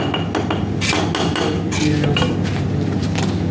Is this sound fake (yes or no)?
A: no